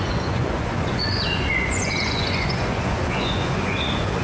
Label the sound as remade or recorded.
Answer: remade